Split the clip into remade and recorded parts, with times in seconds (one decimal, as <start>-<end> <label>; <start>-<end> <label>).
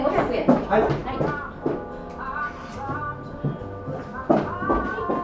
0.0-5.2 recorded